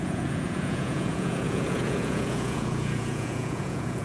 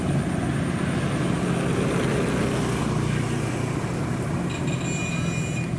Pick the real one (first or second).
second